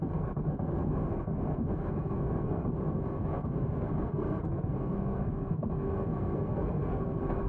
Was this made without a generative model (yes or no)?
no